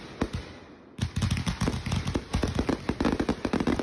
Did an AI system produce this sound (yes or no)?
no